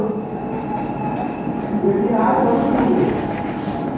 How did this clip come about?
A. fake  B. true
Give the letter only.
B